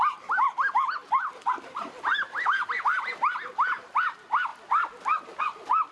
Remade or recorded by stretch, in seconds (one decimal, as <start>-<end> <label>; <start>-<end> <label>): 0.0-5.9 recorded

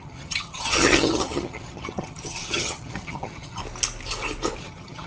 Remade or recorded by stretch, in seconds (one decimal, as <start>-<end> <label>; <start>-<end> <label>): 0.0-3.6 remade; 3.6-4.6 recorded; 4.6-5.1 remade

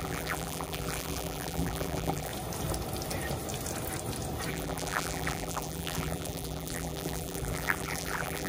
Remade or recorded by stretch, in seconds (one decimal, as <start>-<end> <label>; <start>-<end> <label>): 0.0-2.3 remade; 2.3-4.5 recorded; 4.5-8.5 remade

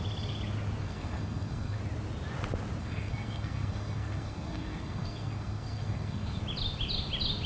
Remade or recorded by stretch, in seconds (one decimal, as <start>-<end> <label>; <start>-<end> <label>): 0.0-0.8 recorded; 0.8-1.8 remade; 1.8-2.8 recorded; 2.8-6.4 remade; 6.4-7.5 recorded

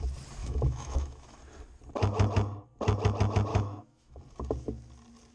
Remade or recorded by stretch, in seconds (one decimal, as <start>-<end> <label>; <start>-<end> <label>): 0.0-0.4 recorded; 0.4-1.4 remade; 1.4-3.5 recorded; 3.5-4.2 remade; 4.2-5.3 recorded

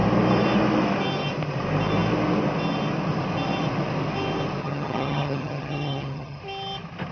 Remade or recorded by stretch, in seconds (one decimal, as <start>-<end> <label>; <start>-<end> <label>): 0.0-4.6 recorded; 4.6-6.4 remade; 6.4-7.1 recorded